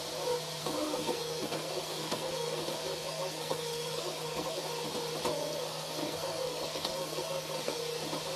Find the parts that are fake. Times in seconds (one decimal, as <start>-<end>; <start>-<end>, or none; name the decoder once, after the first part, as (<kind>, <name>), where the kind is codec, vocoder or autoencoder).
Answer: 0.6-4.6 (codec, SNAC); 5.3-7.8